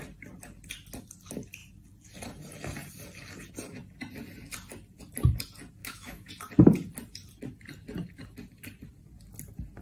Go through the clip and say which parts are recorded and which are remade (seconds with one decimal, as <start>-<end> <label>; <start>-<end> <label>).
0.0-5.8 recorded; 5.8-6.3 remade; 6.3-9.8 recorded